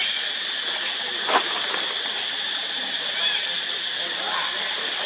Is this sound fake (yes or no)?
no